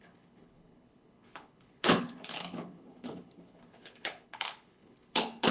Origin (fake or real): fake